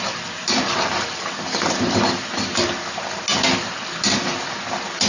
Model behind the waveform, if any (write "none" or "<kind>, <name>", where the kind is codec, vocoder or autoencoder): none